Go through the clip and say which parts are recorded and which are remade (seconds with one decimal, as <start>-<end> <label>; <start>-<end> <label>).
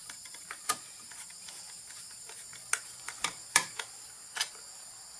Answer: 0.0-0.7 remade; 0.7-2.6 recorded; 2.6-3.9 remade; 3.9-5.2 recorded